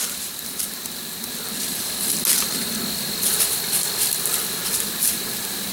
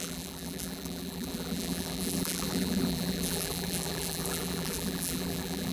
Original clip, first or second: first